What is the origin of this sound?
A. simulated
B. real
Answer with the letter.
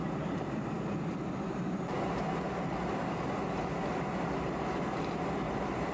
B